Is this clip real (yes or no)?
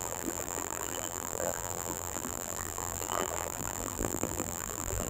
no